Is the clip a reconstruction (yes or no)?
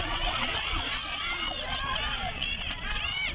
yes